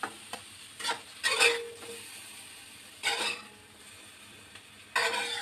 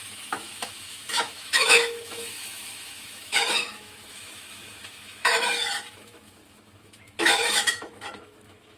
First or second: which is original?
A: first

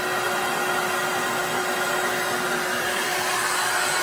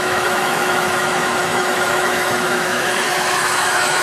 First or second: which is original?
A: first